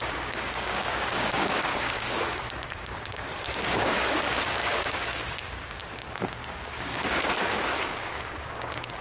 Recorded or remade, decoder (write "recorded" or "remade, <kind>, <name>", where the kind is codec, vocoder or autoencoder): remade, codec, DAC